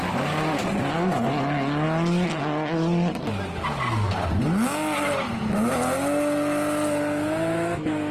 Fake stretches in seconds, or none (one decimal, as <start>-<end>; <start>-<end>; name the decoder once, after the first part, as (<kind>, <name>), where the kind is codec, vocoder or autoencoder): none